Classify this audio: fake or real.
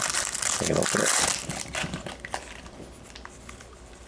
real